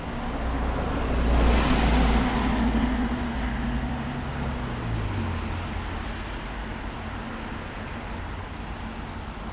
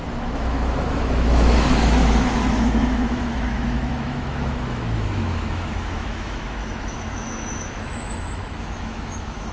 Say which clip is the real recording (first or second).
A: first